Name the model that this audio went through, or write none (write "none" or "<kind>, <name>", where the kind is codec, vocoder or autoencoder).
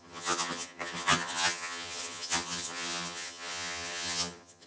vocoder, HiFi-GAN